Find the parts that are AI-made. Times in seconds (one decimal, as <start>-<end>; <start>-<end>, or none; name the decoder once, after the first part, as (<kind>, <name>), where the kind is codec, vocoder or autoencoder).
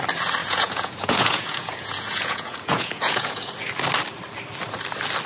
0.4-3.5 (vocoder, Vocos)